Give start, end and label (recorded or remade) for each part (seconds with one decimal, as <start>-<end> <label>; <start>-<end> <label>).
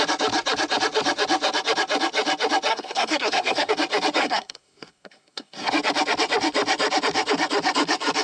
0.0-2.7 recorded; 2.7-3.7 remade; 3.7-4.2 recorded; 4.2-5.7 remade; 5.7-8.2 recorded